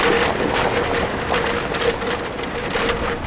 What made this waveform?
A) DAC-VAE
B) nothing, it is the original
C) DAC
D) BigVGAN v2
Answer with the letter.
B